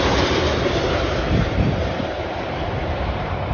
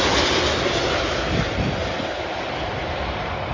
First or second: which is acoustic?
second